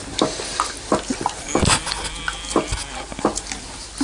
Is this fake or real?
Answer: real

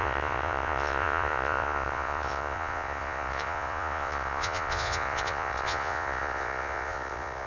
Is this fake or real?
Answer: fake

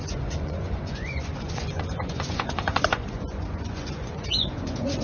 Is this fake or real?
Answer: fake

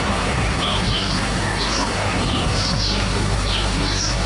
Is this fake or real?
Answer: fake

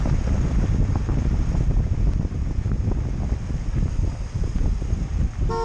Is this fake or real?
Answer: real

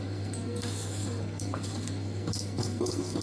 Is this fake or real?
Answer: fake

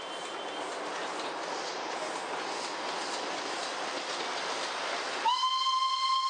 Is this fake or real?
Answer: real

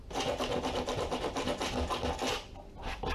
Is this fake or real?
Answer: real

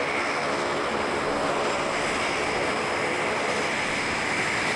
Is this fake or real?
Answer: real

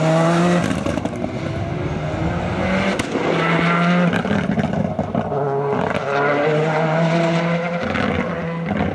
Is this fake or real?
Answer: real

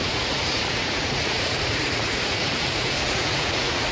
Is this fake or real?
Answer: fake